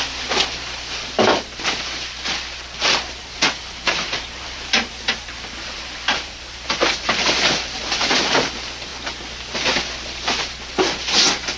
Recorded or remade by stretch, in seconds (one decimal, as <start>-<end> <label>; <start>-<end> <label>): 0.0-3.2 recorded; 3.2-8.0 remade; 8.0-11.6 recorded